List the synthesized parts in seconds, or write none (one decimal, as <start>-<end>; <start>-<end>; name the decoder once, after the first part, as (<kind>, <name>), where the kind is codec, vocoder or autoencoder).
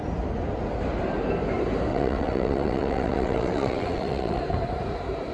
1.9-4.4 (vocoder, WaveNeXt)